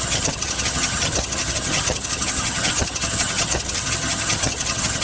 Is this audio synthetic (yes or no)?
yes